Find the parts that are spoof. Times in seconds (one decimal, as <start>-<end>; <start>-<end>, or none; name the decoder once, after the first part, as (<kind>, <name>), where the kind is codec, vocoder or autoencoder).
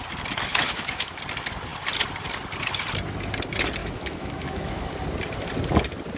0.5-1.2 (autoencoder, DAC-VAE); 3.8-4.9